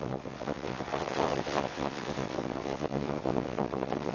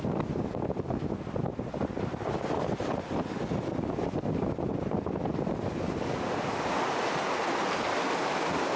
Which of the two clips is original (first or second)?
second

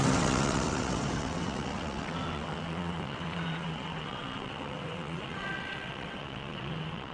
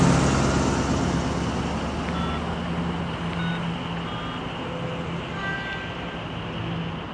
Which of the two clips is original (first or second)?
second